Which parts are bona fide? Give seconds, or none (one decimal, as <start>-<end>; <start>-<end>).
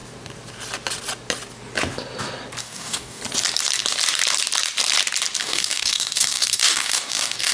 0.0-2.6; 3.2-5.4